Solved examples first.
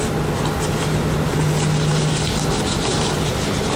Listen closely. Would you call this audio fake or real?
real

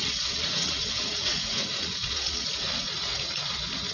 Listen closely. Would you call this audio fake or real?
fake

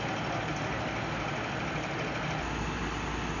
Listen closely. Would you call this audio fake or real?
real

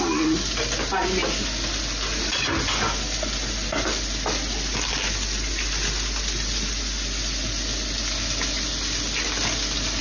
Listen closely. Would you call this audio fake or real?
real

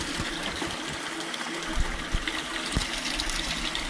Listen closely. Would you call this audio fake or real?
real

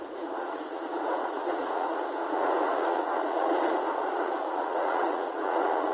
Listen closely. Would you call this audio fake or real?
fake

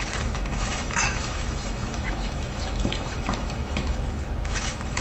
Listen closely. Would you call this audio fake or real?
fake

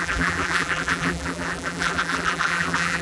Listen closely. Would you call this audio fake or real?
fake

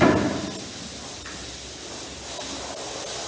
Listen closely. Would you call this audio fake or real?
real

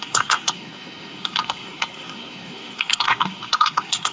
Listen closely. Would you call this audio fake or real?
fake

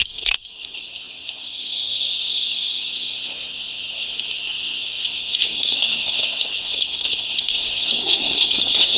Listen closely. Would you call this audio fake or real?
fake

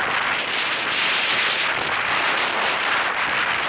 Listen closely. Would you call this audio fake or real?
real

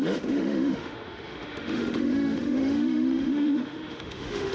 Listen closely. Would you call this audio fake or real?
fake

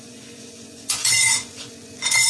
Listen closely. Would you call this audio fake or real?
fake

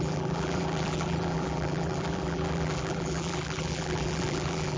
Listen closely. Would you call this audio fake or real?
fake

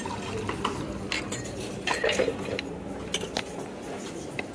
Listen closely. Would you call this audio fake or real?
real